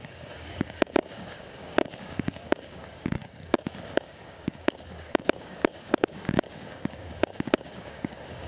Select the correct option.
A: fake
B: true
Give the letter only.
A